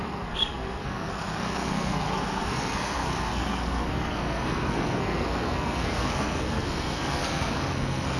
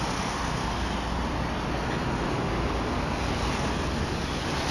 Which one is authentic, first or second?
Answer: second